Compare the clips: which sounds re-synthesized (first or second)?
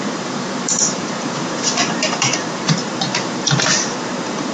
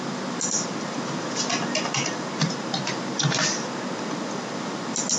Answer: first